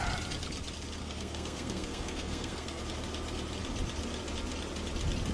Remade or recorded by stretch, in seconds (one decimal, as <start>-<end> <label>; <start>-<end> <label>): 0.0-1.0 recorded; 1.0-2.8 remade; 2.8-5.3 recorded